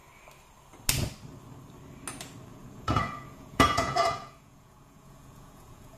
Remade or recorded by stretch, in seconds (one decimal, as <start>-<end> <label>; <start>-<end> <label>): 0.0-2.5 recorded; 2.5-6.0 remade